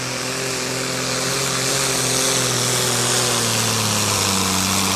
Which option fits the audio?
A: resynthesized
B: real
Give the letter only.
B